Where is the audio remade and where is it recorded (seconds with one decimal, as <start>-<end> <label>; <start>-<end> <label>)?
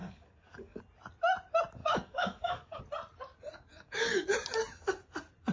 0.0-0.8 remade; 0.8-1.8 recorded; 1.8-2.8 remade; 2.8-3.7 recorded; 3.7-4.3 remade; 4.3-5.5 recorded